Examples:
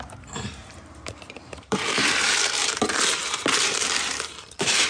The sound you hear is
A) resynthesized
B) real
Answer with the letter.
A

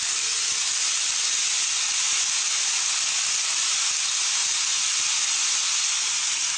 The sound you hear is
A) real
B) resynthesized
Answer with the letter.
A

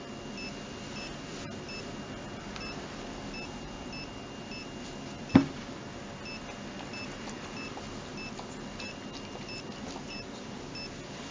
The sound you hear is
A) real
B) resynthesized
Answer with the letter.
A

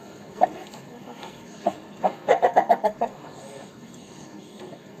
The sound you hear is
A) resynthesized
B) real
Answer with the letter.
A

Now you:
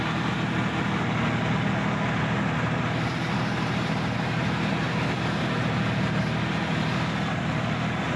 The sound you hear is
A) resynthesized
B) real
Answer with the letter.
B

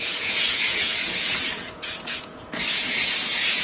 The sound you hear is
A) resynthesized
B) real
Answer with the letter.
A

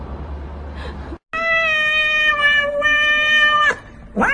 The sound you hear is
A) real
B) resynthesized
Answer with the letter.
A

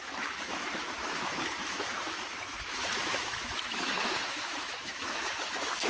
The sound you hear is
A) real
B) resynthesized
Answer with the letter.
B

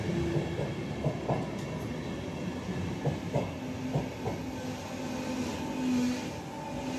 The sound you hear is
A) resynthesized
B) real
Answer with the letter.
B